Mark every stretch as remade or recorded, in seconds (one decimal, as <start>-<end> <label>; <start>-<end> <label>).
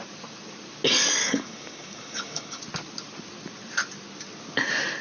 0.0-1.2 recorded; 1.2-2.6 remade; 2.6-5.0 recorded